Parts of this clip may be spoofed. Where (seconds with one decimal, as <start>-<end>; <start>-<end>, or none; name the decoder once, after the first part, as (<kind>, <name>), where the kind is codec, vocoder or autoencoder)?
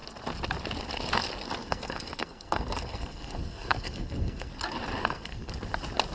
1.6-4.5 (codec, SNAC); 5.0-5.5